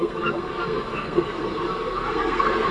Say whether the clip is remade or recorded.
remade